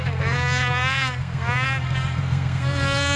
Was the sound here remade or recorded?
remade